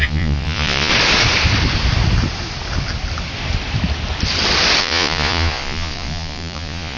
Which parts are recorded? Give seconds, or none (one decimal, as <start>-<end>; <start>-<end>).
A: 0.9-4.8